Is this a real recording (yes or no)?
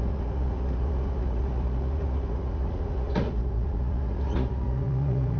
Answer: no